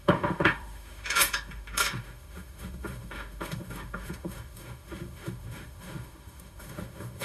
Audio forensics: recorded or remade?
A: remade